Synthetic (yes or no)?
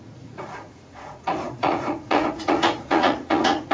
yes